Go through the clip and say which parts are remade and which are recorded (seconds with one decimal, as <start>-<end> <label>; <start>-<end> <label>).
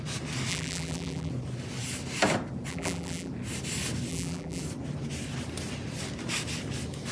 0.0-0.5 recorded; 0.5-1.3 remade; 1.3-2.7 recorded; 2.7-3.3 remade; 3.3-4.1 recorded; 4.1-4.6 remade; 4.6-7.1 recorded